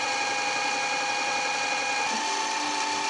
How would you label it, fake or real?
real